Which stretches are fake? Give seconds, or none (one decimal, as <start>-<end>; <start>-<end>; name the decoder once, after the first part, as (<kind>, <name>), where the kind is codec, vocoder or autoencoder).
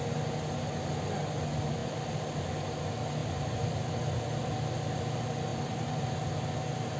1.8-2.5 (vocoder, BigVGAN v2); 3.2-4.5; 5.5-6.1